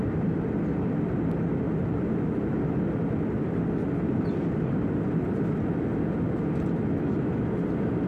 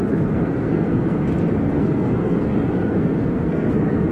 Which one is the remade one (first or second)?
second